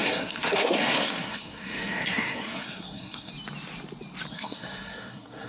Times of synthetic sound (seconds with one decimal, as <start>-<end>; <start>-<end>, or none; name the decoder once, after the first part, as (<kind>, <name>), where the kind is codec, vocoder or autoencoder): 0.0-3.3 (codec, SNAC); 4.3-5.5